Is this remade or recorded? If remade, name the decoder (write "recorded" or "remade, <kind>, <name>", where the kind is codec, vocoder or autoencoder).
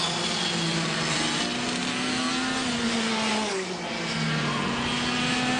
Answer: recorded